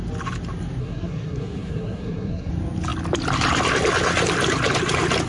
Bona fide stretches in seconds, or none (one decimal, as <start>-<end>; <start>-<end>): 0.0-0.8; 2.5-5.3